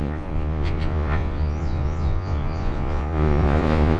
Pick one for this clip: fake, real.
fake